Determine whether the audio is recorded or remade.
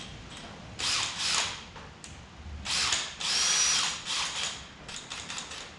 recorded